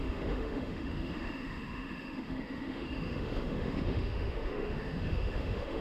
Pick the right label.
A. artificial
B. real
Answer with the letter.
A